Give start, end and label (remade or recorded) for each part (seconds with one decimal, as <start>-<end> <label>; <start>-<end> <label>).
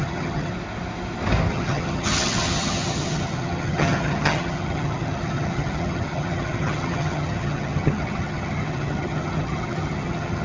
0.0-0.5 remade; 0.5-1.5 recorded; 1.5-10.4 remade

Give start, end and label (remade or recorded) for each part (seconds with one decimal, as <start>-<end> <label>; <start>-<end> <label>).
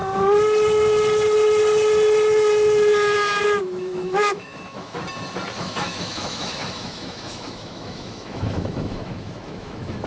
0.0-3.6 recorded; 3.6-5.0 remade; 5.0-5.6 recorded; 5.6-10.1 remade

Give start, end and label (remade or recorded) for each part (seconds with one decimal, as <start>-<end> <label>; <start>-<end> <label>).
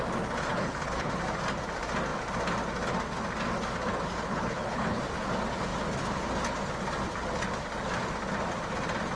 0.0-0.5 recorded; 0.5-1.1 remade; 1.1-4.2 recorded; 4.2-5.0 remade; 5.0-9.2 recorded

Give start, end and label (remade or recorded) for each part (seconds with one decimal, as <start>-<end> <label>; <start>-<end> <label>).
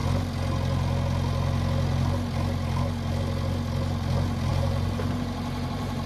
0.0-4.5 recorded; 4.5-6.1 remade